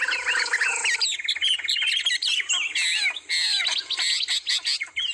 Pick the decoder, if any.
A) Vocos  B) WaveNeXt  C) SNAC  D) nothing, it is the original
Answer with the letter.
D